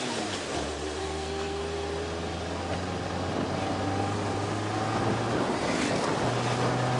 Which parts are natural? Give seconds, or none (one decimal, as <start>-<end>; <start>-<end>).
0.0-1.0; 1.6-7.0